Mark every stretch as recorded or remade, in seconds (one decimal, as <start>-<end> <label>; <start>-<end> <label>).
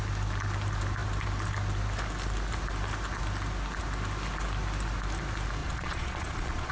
0.0-5.6 recorded; 5.6-6.7 remade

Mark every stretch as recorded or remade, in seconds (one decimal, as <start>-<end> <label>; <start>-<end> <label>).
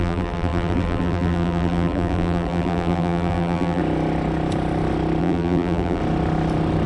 0.0-3.8 remade; 3.8-5.2 recorded; 5.2-6.0 remade; 6.0-6.9 recorded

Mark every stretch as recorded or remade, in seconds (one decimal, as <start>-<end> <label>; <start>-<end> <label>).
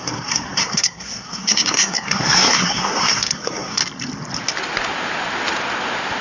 0.0-3.8 remade; 3.8-6.2 recorded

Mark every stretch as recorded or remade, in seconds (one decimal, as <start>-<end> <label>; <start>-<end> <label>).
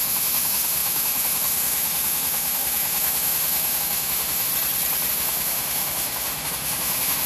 0.0-4.5 remade; 4.5-5.1 recorded; 5.1-7.3 remade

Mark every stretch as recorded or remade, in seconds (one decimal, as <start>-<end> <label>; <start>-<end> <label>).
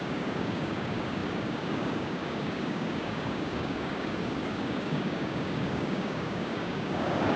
0.0-7.4 remade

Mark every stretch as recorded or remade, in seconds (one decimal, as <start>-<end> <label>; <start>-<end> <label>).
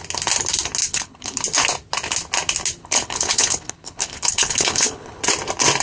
0.0-0.8 recorded; 0.8-1.4 remade; 1.4-2.8 recorded; 2.8-5.2 remade; 5.2-5.8 recorded